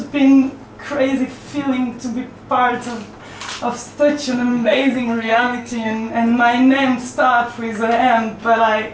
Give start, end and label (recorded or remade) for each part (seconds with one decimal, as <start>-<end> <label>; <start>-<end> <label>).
0.0-4.5 recorded; 4.5-6.1 remade; 6.1-8.9 recorded